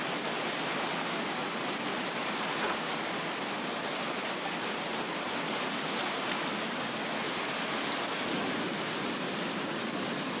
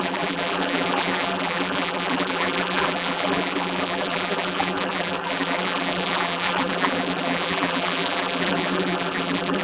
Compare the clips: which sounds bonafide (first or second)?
first